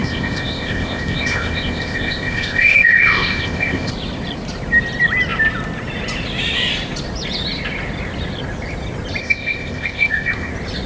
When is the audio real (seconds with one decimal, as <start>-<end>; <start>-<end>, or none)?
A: 3.9-9.2; 10.5-10.9